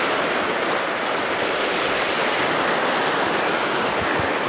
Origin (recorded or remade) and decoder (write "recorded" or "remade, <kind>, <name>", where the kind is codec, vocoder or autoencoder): recorded